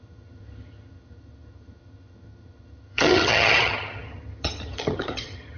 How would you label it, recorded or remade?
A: remade